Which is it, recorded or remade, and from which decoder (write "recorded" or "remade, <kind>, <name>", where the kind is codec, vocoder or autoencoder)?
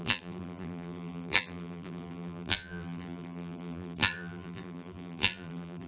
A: remade, vocoder, BigVGAN v2